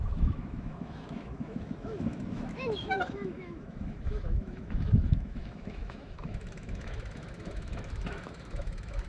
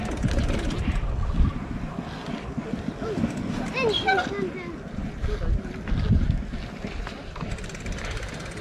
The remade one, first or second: first